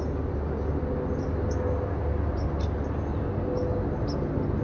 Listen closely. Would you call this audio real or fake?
real